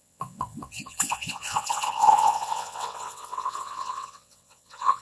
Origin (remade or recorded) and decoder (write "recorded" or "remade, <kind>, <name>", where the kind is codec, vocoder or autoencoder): remade, vocoder, WaveNeXt